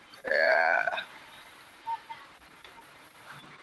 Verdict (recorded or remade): remade